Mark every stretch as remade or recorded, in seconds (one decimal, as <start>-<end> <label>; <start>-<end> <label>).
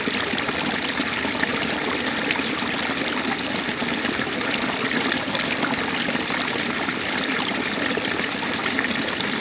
0.0-9.4 recorded